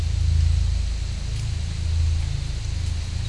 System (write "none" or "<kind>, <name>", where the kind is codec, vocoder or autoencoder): none